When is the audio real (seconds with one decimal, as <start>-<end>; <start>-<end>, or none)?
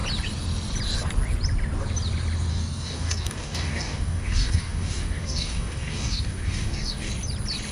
0.0-2.5; 7.1-7.7